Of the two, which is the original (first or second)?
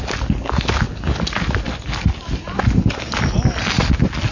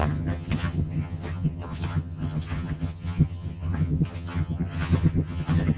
first